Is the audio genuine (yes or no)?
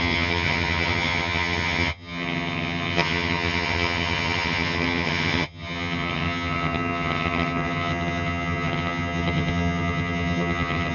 no